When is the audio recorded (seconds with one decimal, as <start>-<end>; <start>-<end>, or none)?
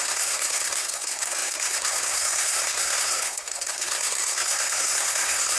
none